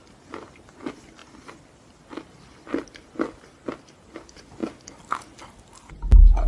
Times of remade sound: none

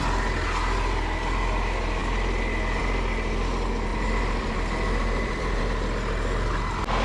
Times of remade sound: 3.9-5.6 (vocoder, BigVGAN v2)

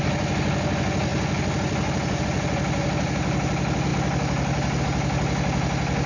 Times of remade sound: none

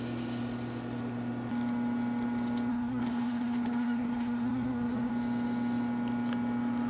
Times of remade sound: 2.7-5.1 (codec, SNAC)

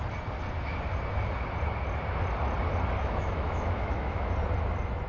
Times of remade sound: 3.0-4.3 (autoencoder, DAC-VAE)

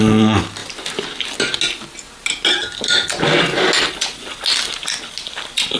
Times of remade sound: none